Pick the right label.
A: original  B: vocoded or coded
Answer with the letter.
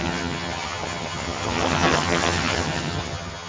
B